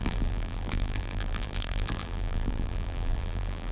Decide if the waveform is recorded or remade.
remade